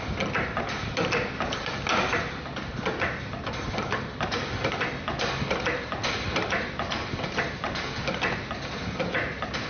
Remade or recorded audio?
recorded